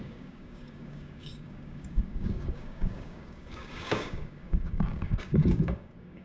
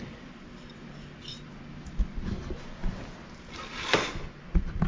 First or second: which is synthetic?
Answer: first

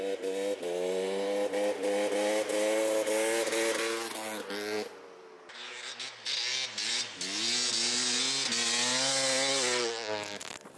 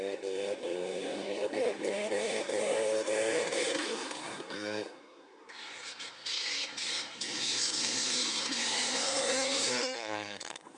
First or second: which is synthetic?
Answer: second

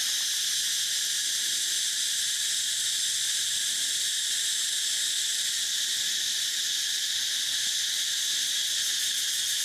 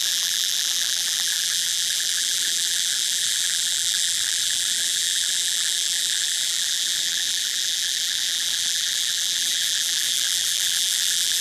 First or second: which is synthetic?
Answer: second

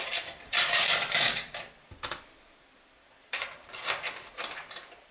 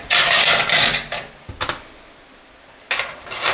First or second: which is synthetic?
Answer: first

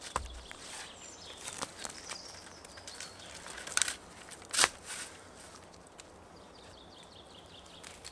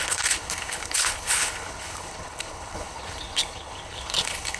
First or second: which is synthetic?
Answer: second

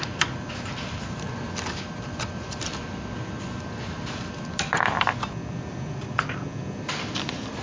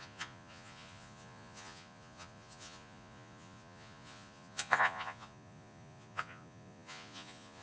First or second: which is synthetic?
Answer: second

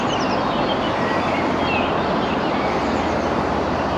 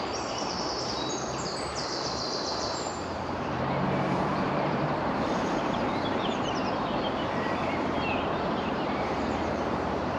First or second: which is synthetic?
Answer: second